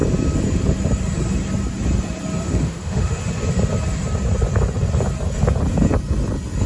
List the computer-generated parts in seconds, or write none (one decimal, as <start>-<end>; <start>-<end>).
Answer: 2.4-3.2